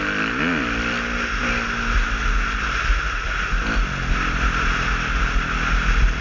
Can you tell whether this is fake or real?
real